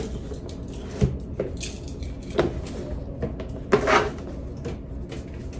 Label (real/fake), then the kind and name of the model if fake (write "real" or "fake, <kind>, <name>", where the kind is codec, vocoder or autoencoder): real